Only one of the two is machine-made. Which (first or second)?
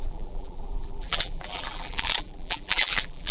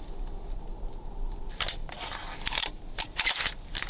first